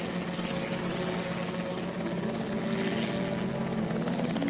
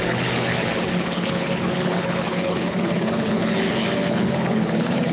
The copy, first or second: second